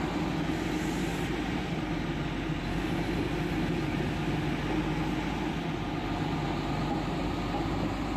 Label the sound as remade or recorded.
recorded